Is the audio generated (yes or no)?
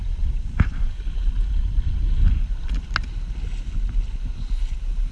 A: no